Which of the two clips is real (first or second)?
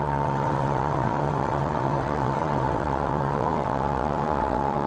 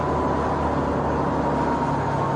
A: second